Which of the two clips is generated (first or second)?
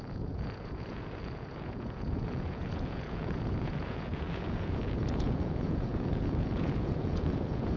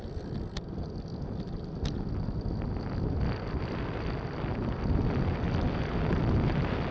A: first